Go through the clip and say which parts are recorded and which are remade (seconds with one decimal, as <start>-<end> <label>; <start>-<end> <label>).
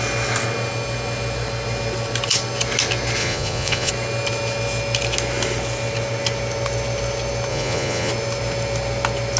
0.0-3.2 recorded; 3.2-3.9 remade; 3.9-7.5 recorded; 7.5-8.1 remade; 8.1-9.4 recorded